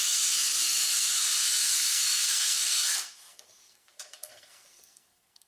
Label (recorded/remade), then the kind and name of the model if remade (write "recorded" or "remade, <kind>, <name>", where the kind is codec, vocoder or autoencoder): remade, codec, SNAC